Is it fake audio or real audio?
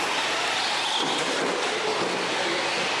real